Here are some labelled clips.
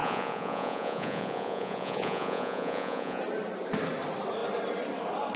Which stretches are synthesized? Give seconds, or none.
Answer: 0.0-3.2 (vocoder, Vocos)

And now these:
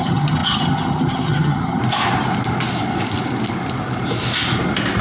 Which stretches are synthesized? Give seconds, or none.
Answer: 0.0-1.8 (vocoder, HiFi-GAN)

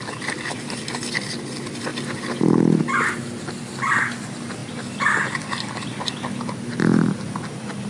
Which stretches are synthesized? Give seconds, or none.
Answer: 1.9-2.8 (vocoder, BigVGAN v2)

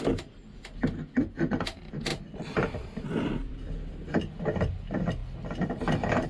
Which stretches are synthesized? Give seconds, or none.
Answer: 2.1-3.9 (vocoder, BigVGAN v2)

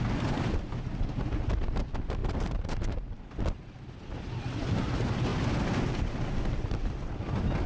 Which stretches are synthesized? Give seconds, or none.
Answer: 2.2-3.3 (vocoder, BigVGAN v2)

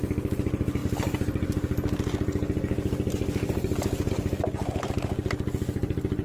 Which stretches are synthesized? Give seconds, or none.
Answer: none

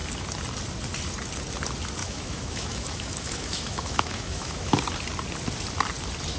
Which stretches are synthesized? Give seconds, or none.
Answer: 2.0-4.8 (autoencoder, DAC-VAE)

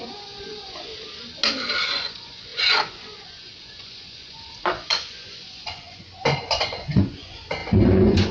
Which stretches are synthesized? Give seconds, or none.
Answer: 0.0-0.9 (vocoder, Vocos); 1.8-8.3